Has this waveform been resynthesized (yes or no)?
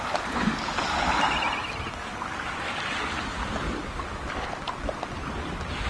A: no